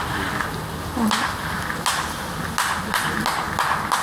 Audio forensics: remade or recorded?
recorded